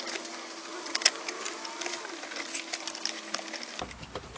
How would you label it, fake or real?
real